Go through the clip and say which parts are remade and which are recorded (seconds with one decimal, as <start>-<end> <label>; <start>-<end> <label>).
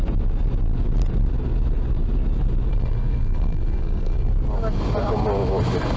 0.0-2.7 recorded; 2.7-4.3 remade; 4.3-6.0 recorded